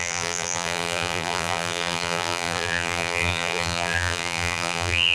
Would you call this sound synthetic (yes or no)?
yes